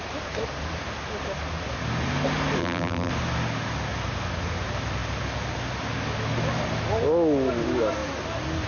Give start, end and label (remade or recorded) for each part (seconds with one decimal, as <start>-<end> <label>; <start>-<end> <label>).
0.0-2.6 recorded; 2.6-3.1 remade; 3.1-8.7 recorded